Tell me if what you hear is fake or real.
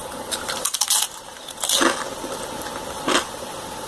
real